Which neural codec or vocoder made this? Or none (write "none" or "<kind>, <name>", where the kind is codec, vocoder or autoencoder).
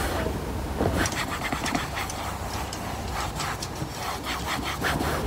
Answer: none